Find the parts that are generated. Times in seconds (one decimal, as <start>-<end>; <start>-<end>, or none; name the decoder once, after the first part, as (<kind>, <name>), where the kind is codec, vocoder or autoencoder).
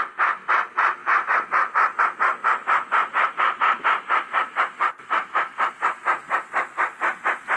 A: 1.0-2.0 (vocoder, BigVGAN v2); 5.0-5.7